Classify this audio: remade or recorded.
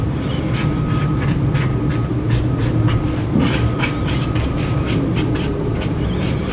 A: remade